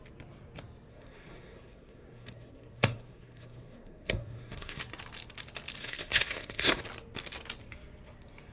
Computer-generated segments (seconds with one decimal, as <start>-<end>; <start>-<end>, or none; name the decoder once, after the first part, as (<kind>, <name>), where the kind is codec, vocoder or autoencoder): 0.9-4.8 (codec, SNAC); 5.8-6.8